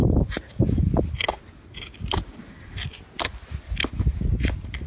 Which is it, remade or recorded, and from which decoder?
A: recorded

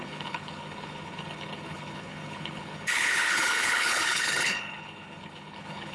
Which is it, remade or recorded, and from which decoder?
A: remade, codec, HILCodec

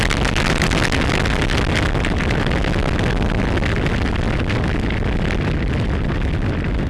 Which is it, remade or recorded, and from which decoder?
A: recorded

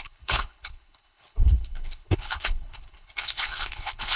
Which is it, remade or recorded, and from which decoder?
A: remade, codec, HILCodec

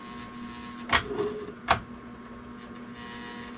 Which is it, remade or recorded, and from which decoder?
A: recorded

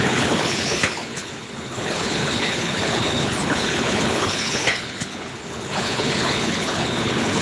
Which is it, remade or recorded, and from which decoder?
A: remade, codec, HILCodec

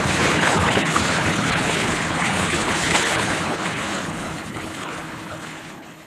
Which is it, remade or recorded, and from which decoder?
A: remade, codec, HILCodec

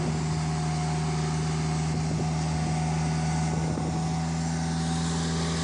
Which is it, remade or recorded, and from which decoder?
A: recorded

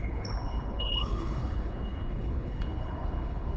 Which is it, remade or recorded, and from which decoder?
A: remade, codec, HILCodec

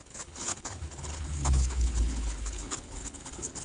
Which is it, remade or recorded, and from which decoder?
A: remade, codec, HILCodec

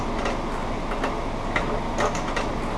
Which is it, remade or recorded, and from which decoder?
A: recorded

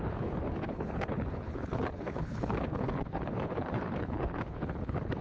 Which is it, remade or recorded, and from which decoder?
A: remade, codec, HILCodec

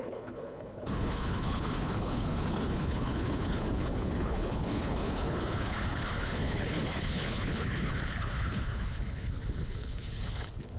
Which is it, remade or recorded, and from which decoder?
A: remade, codec, HILCodec